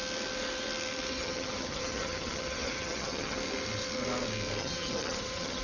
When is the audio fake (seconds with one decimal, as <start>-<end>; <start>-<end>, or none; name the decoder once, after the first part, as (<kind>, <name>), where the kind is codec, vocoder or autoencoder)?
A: 1.1-3.4 (vocoder, HiFi-GAN); 4.6-5.6